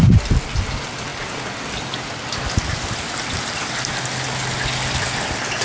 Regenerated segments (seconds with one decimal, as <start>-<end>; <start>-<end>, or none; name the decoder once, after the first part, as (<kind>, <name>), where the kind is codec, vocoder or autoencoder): none